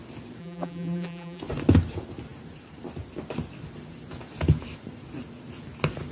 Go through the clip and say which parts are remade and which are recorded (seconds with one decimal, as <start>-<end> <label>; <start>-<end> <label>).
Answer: 0.0-0.4 recorded; 0.4-1.4 remade; 1.4-6.1 recorded